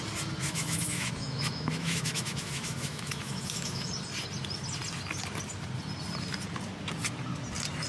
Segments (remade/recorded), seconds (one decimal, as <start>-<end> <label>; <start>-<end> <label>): 0.0-0.4 recorded; 0.4-3.9 remade; 3.9-7.9 recorded